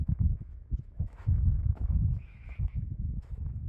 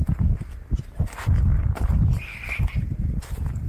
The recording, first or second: second